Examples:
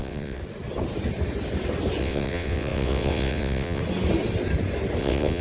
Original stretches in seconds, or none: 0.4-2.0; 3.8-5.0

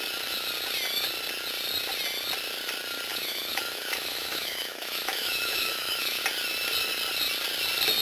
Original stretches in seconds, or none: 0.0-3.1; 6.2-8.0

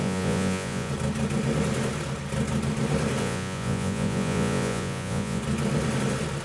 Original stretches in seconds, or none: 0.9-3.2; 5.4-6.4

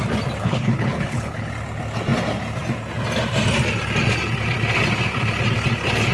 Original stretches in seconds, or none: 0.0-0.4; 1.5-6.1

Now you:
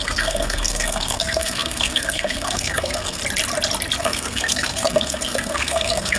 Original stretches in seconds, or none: 3.2-4.0